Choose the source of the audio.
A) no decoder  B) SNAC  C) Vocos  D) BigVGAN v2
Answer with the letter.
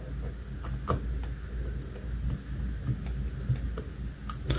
A